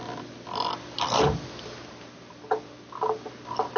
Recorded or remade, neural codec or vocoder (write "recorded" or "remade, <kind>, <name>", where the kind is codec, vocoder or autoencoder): recorded